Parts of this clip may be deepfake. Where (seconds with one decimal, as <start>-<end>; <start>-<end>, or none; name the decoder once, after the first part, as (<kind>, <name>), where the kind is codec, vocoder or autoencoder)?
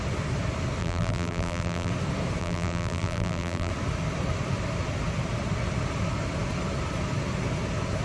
0.8-1.9 (vocoder, BigVGAN v2); 2.4-3.7